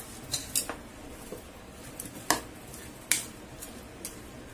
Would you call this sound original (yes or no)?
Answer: yes